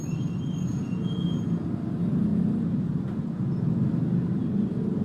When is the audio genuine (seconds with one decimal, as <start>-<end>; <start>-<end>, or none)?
0.0-0.7; 1.6-5.0